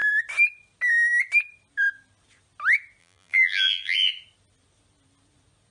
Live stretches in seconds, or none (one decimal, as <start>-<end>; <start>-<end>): 0.0-3.0; 4.1-5.7